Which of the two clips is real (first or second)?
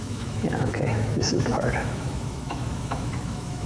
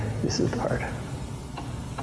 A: second